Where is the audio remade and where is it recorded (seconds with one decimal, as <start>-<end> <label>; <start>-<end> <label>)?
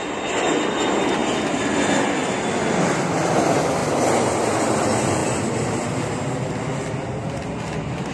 0.0-8.1 recorded